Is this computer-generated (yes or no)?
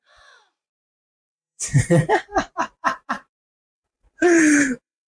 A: yes